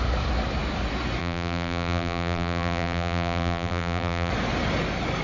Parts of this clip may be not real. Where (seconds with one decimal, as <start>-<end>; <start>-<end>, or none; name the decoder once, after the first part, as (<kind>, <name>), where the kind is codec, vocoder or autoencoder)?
1.2-4.3 (vocoder, BigVGAN v2)